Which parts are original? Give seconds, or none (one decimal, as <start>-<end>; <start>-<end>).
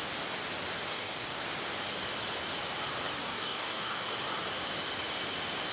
0.0-0.9; 1.4-3.2; 4.1-5.7